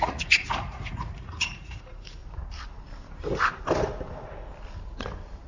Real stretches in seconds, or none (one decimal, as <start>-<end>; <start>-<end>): 2.2-5.5